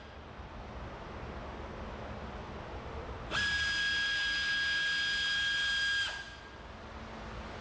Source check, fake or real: real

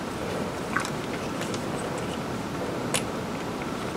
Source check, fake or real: real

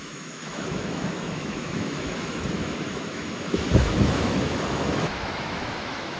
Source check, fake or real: fake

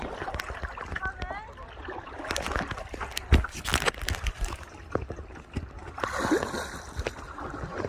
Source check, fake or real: real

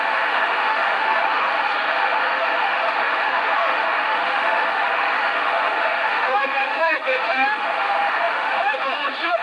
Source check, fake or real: fake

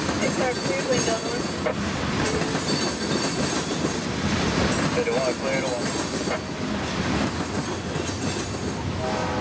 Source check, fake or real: real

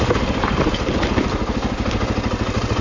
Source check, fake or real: real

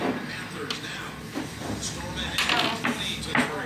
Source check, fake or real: real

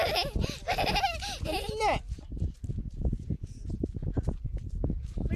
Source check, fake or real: real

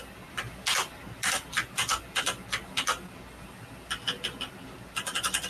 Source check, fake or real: real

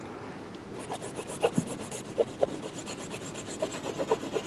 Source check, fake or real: real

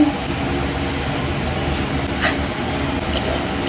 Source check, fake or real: real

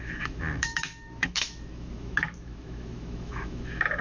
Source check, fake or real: fake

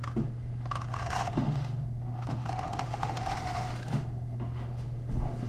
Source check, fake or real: fake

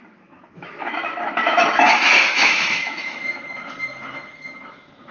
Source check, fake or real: fake